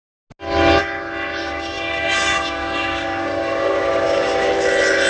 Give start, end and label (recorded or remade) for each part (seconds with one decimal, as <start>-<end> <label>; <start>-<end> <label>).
0.0-1.4 recorded; 1.4-4.5 remade; 4.5-5.1 recorded